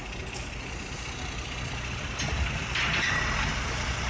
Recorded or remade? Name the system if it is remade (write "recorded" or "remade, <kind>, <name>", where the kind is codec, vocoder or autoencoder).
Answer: recorded